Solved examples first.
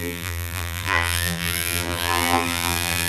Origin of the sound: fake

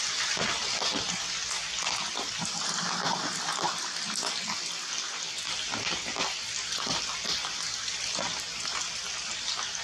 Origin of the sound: real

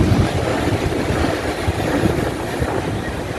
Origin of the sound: real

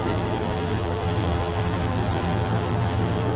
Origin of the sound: fake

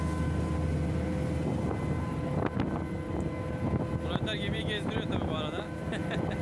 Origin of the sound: real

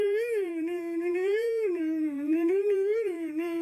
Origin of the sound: fake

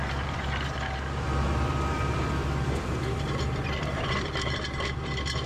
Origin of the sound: fake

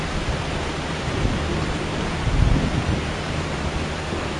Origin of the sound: fake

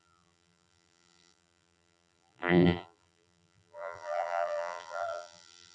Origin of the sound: fake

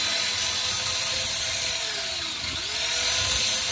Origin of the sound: real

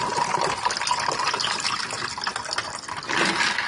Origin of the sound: real